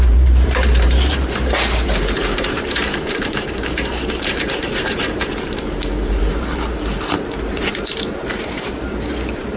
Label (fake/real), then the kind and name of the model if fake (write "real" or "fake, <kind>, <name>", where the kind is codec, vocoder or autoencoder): fake, vocoder, BigVGAN v2